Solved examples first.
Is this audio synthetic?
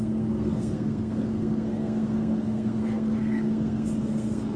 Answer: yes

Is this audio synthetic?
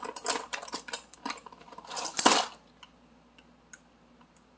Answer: no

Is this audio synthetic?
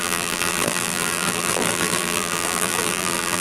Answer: yes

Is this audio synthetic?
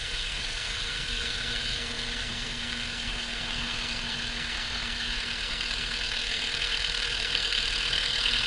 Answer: yes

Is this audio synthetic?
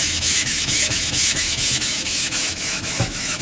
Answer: yes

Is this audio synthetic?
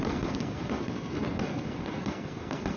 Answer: yes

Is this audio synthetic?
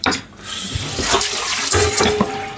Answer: yes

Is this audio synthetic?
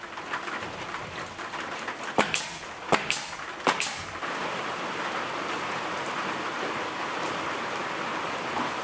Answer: yes